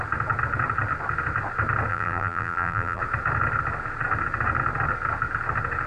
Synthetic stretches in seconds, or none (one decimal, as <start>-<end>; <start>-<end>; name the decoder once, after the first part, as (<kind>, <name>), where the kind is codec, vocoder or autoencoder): 1.9-3.0 (vocoder, BigVGAN v2)